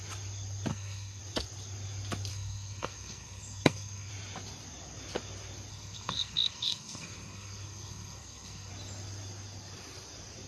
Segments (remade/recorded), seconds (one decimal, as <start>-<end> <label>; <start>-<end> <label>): 0.0-0.7 recorded; 0.7-1.2 remade; 1.2-2.3 recorded; 2.3-4.1 remade; 4.1-5.7 recorded; 5.7-8.7 remade; 8.7-10.5 recorded